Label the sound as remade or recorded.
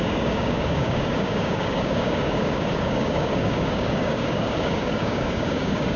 remade